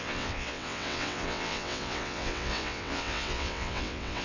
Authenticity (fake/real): fake